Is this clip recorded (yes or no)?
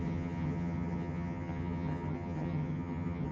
no